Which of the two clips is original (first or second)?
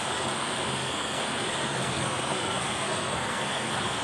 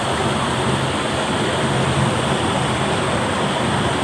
second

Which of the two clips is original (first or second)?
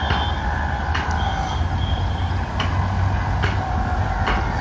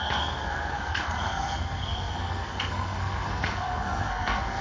first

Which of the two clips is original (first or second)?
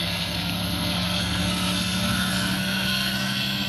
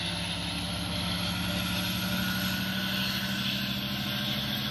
second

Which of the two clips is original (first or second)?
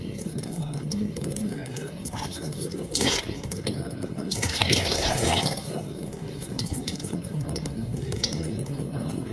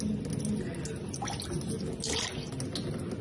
second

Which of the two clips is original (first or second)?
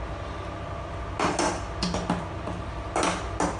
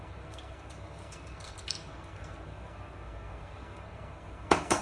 first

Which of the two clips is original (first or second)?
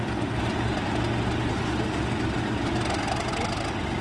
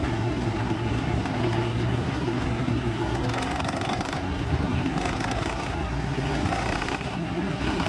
first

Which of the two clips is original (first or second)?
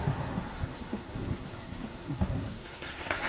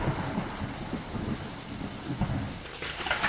second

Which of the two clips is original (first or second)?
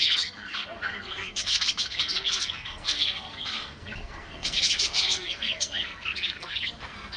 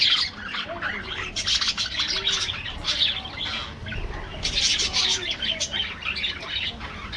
second